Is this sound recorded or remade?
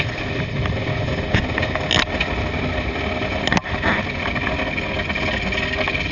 recorded